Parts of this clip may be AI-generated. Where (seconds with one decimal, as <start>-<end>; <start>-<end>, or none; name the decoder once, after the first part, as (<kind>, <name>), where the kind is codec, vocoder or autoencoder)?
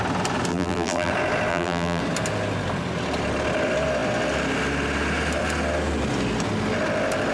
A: 0.5-1.1 (vocoder, BigVGAN v2); 1.5-2.0